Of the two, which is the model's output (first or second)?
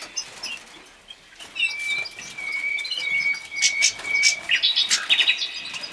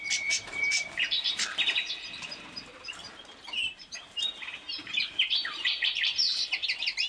second